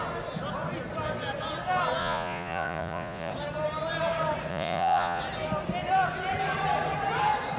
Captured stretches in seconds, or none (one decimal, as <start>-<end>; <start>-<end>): 0.0-2.0; 3.3-4.5; 5.2-7.6